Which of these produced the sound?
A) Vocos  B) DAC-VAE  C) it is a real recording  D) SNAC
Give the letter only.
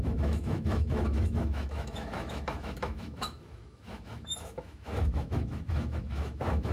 B